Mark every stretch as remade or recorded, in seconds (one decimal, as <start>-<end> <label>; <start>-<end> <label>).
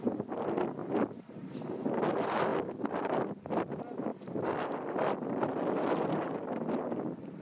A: 0.0-7.4 recorded